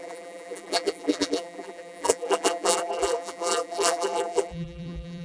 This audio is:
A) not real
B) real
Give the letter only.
A